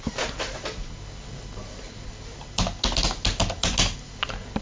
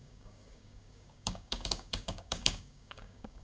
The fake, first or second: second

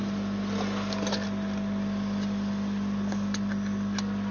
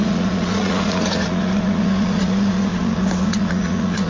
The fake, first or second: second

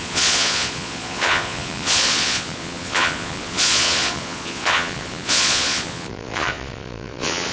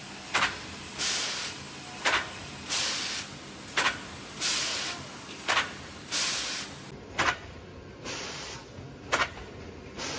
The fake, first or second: first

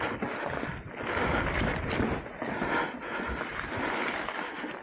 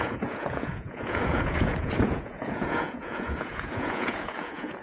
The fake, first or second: second